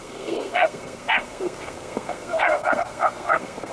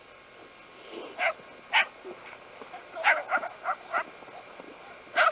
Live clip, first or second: second